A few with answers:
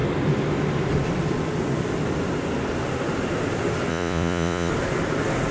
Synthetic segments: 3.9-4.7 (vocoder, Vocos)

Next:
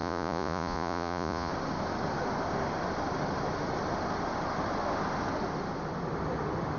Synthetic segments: 0.0-1.5 (vocoder, Vocos)

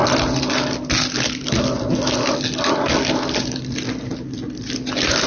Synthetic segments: none

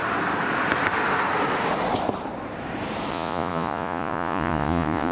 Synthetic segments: 3.1-5.1 (vocoder, Vocos)

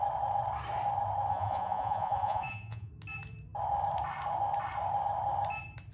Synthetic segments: 1.3-2.9 (vocoder, Vocos)

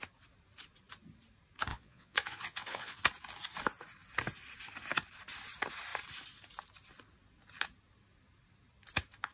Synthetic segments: 1.7-3.0 (vocoder, Vocos)

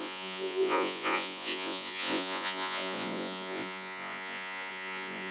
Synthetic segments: 0.0-5.3 (vocoder, Vocos)

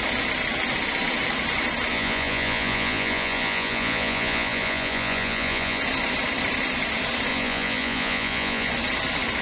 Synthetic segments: 1.9-5.8 (vocoder, Vocos); 7.3-8.7